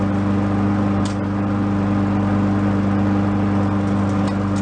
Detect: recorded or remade recorded